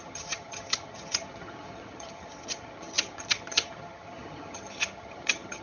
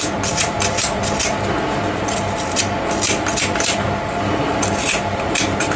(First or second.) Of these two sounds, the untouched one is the second